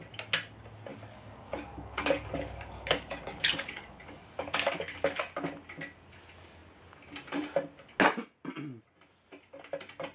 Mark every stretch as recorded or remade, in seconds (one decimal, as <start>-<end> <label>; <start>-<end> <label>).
0.0-0.9 recorded; 0.9-5.2 remade; 5.2-10.1 recorded